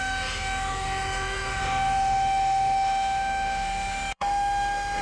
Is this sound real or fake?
fake